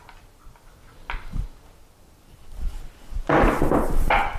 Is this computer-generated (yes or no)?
no